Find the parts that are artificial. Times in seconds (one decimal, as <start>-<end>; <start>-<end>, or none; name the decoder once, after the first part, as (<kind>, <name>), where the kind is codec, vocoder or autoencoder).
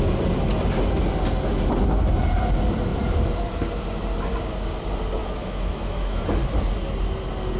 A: 5.2-6.2 (autoencoder, DAC-VAE)